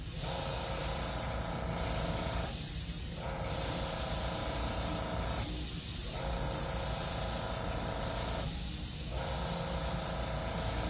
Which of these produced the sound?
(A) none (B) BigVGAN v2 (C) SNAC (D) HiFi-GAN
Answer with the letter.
A